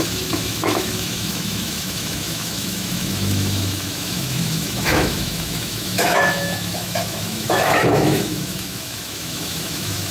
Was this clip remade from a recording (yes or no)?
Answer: yes